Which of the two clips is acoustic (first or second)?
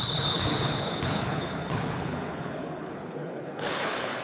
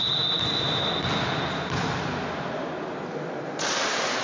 second